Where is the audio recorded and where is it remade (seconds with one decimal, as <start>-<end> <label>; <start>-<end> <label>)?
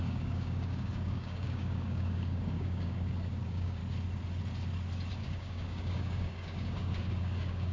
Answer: 0.0-3.8 remade; 3.8-5.1 recorded; 5.1-7.7 remade